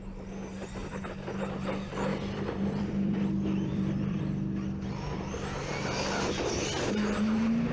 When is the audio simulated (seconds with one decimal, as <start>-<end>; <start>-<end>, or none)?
0.8-1.3; 2.1-4.2